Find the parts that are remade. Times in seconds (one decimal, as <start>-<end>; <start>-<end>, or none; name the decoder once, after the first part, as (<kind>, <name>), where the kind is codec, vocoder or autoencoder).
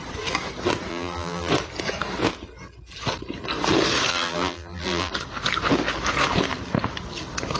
0.9-1.5 (vocoder, BigVGAN v2); 4.1-5.1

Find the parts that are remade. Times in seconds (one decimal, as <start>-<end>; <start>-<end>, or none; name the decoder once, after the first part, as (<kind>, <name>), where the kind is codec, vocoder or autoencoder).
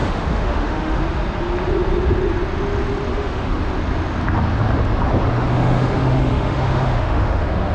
0.0-1.0 (autoencoder, DAC-VAE); 3.1-3.7; 5.5-7.7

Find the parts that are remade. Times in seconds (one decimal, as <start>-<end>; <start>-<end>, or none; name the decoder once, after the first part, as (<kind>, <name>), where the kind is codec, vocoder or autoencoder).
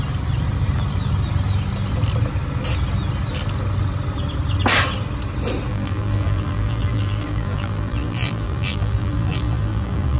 5.7-10.2 (vocoder, BigVGAN v2)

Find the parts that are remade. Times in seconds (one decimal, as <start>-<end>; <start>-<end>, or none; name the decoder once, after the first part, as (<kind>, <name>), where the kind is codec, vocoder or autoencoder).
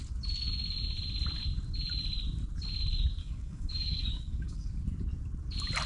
3.2-4.7 (codec, DAC)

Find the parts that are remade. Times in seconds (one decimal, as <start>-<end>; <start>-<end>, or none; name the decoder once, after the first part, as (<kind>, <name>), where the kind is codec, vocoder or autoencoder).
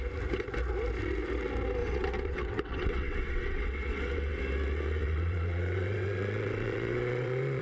1.8-4.4 (vocoder, WaveNeXt); 5.0-7.6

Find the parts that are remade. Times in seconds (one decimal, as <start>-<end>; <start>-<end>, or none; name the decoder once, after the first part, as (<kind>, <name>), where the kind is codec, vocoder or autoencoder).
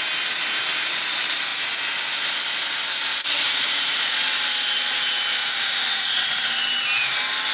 3.1-4.2 (vocoder, Vocos); 5.4-6.5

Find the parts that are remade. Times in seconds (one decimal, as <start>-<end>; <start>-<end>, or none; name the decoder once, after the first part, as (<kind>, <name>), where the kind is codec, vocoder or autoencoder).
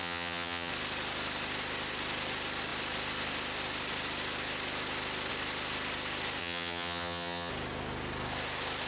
0.0-0.7 (vocoder, HiFi-GAN); 6.4-7.5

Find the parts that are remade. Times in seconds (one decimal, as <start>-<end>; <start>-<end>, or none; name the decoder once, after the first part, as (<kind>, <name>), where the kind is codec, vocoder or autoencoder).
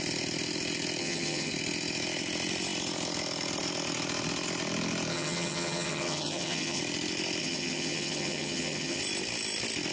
1.0-1.5 (vocoder, HiFi-GAN); 5.1-6.8; 7.4-9.0